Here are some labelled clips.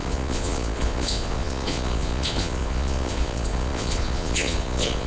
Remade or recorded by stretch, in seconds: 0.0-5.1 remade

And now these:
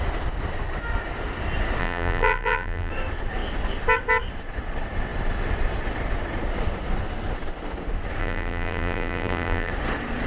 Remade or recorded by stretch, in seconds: 0.0-1.8 recorded; 1.8-2.9 remade; 2.9-8.2 recorded; 8.2-9.7 remade; 9.7-10.3 recorded

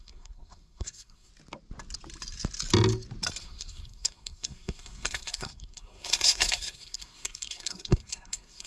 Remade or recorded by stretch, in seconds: 0.0-1.3 remade; 1.3-3.4 recorded; 3.4-8.7 remade

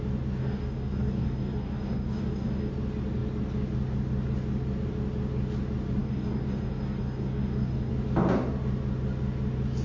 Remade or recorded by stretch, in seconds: 0.0-0.4 recorded; 0.4-2.7 remade; 2.7-6.0 recorded; 6.0-7.9 remade; 7.9-9.8 recorded

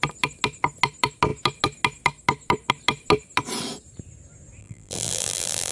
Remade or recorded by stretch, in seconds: 0.0-4.6 recorded; 4.6-5.7 remade

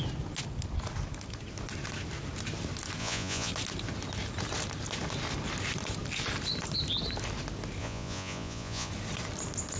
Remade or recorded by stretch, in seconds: 0.0-3.0 recorded; 3.0-3.5 remade; 3.5-7.8 recorded; 7.8-8.9 remade; 8.9-9.8 recorded

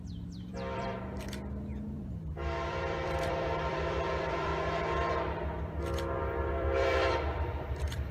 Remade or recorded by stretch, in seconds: 0.0-4.5 remade; 4.5-6.5 recorded; 6.5-8.1 remade